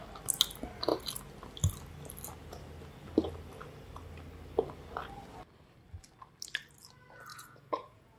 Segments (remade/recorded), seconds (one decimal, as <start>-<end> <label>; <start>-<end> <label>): 0.0-7.3 recorded; 7.3-8.2 remade